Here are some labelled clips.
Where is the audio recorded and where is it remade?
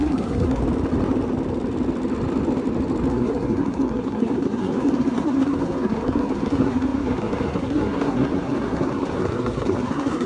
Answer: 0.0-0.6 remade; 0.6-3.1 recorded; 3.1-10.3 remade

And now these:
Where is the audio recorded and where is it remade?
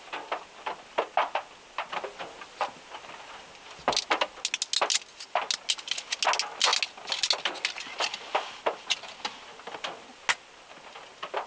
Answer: 0.0-11.5 recorded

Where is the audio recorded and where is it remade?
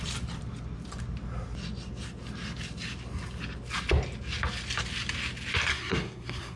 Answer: 0.0-5.7 recorded; 5.7-6.6 remade